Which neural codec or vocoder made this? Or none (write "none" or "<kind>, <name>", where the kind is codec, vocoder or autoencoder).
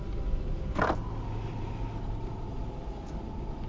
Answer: none